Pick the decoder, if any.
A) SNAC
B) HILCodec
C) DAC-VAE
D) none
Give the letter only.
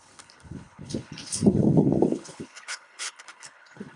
B